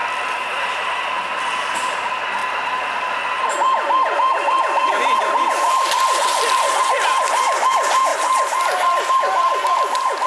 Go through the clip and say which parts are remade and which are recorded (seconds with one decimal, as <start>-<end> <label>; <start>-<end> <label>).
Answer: 0.0-1.1 recorded; 1.1-8.1 remade; 8.1-9.1 recorded; 9.1-10.3 remade